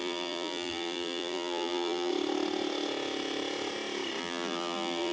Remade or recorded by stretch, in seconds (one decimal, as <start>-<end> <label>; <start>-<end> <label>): 0.0-2.1 remade; 2.1-4.2 recorded; 4.2-5.1 remade